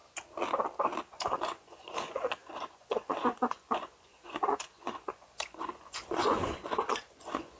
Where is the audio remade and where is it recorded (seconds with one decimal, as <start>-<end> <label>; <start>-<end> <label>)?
0.0-1.1 recorded; 1.1-7.6 remade